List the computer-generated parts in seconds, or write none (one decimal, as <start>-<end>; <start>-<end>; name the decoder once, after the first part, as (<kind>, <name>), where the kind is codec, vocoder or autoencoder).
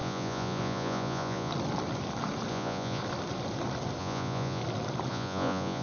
0.0-1.5 (vocoder, Vocos); 2.5-3.0; 4.0-4.6; 5.1-5.8